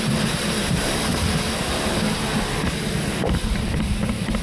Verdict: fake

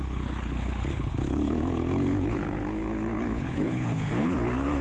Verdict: fake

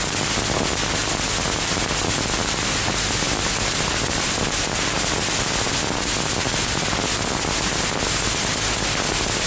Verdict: real